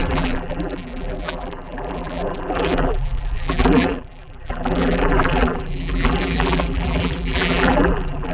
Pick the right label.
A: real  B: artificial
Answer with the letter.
B